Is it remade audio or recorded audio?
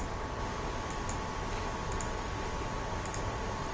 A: recorded